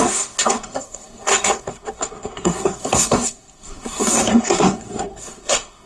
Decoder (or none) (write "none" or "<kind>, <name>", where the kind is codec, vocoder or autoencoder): codec, SNAC